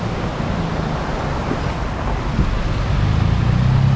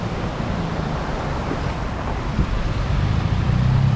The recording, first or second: first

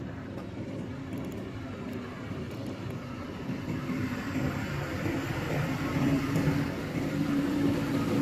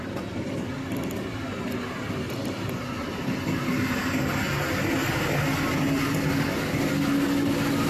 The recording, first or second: second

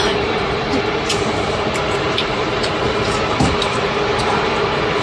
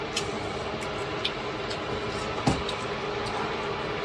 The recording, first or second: second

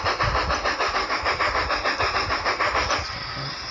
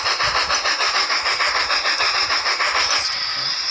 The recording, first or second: second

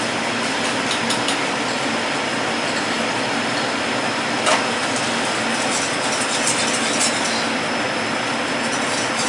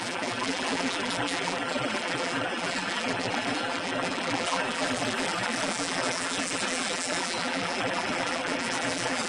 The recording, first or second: first